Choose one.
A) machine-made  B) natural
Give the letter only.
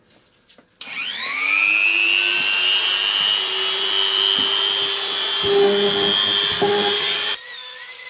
B